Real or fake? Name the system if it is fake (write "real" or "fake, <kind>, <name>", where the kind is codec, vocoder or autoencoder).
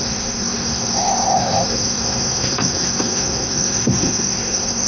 fake, codec, SNAC